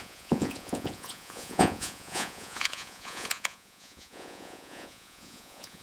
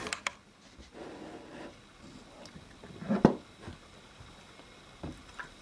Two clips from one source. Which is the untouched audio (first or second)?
second